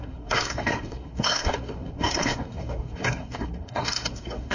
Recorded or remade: remade